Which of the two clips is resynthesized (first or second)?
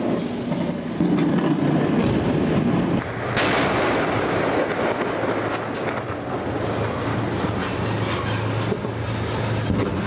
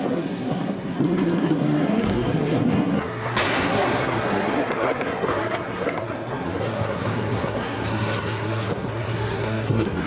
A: second